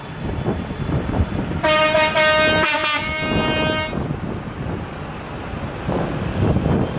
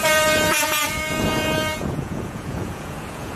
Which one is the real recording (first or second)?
first